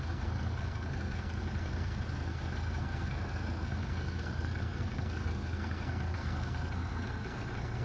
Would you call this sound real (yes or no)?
no